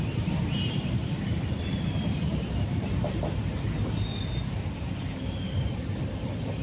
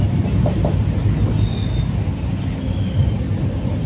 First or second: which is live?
second